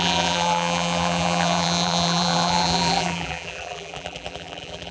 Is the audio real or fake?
fake